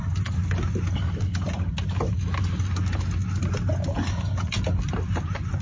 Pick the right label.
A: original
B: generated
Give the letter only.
A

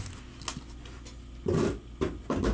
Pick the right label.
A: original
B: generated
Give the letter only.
A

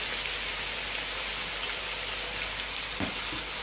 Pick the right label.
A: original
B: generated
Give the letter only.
A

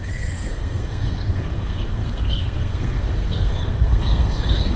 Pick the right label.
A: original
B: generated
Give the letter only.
B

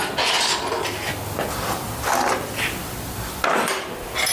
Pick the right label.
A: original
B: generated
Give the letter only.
A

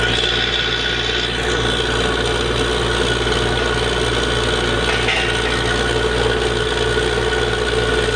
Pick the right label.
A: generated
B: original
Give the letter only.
B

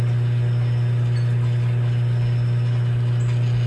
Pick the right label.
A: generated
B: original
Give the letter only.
B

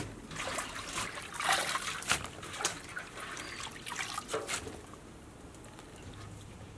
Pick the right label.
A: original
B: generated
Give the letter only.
A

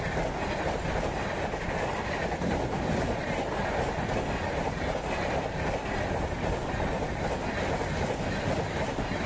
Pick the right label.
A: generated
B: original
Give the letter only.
B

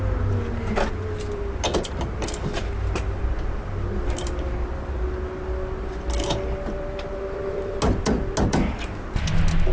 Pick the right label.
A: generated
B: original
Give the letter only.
B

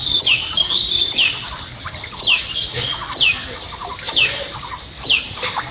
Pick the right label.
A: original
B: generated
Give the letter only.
B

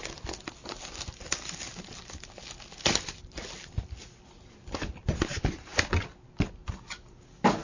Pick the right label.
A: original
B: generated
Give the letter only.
A